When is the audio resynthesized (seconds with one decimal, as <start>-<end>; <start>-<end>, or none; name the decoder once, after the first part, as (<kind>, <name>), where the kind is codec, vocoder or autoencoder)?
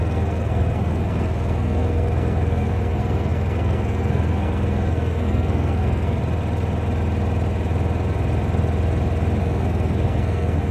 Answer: 0.0-6.2 (codec, SNAC); 9.4-10.7